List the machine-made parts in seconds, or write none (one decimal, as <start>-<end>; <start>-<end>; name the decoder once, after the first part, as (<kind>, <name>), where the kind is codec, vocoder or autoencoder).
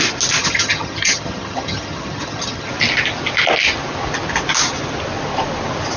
0.4-2.7 (vocoder, HiFi-GAN)